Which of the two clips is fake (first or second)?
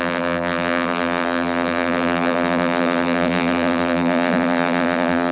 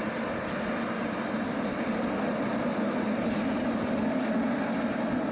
first